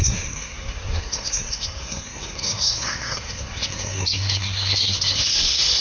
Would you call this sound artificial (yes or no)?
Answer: yes